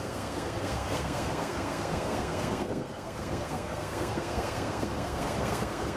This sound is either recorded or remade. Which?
remade